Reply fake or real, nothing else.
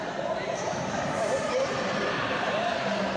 fake